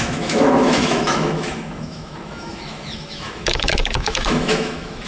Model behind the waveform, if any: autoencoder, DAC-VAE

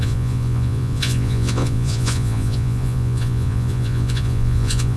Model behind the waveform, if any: vocoder, Vocos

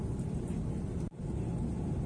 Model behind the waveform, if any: none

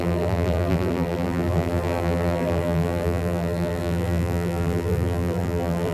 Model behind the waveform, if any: vocoder, BigVGAN v2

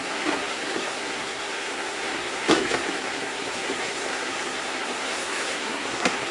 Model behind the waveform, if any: codec, SNAC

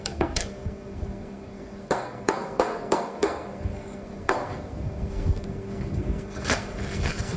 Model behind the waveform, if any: codec, SNAC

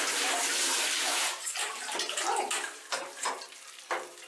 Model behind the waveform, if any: vocoder, BigVGAN v2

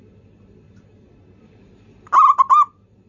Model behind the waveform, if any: none